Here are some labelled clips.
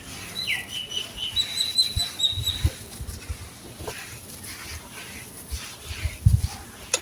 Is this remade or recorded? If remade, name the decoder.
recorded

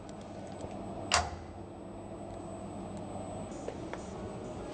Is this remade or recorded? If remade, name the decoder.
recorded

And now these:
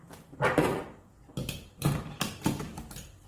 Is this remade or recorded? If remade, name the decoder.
remade, vocoder, BigVGAN v2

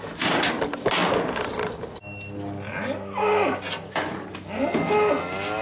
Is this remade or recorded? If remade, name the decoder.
recorded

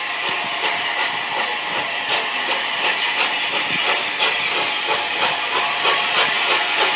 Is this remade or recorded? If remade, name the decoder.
recorded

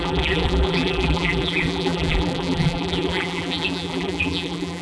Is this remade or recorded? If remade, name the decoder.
remade, vocoder, BigVGAN v2